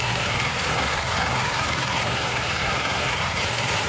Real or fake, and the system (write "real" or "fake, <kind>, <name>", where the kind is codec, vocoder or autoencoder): fake, codec, SNAC